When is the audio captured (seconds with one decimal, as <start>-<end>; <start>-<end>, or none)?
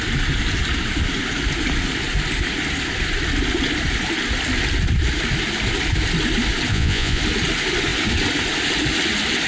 0.0-6.7; 7.2-9.5